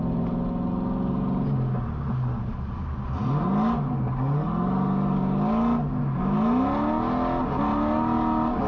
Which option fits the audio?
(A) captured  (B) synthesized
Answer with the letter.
A